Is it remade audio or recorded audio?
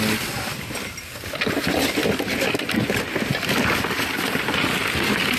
recorded